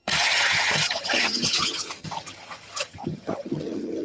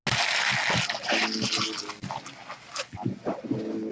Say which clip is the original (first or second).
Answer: second